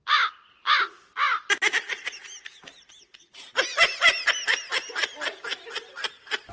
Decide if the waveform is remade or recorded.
recorded